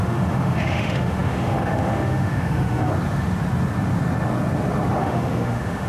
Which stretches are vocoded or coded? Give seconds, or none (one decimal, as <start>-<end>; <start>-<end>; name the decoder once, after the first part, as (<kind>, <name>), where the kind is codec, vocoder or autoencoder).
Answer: 0.0-2.9 (autoencoder, DAC-VAE); 5.0-5.9